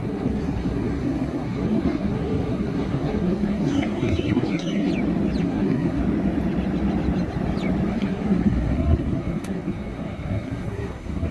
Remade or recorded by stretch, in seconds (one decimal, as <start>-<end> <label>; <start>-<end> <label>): 0.0-4.9 remade; 4.9-5.4 recorded; 5.4-6.0 remade; 6.0-7.9 recorded; 7.9-11.3 remade